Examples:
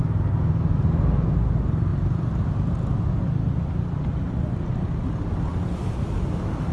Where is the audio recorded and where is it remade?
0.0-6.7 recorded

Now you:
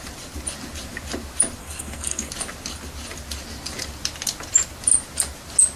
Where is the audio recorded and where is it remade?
0.0-1.6 recorded; 1.6-2.3 remade; 2.3-5.8 recorded

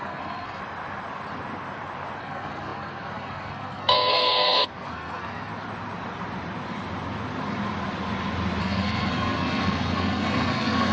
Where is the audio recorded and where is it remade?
0.0-0.6 remade; 0.6-2.2 recorded; 2.2-5.5 remade; 5.5-8.6 recorded; 8.6-10.9 remade